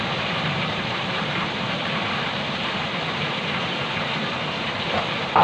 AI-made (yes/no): yes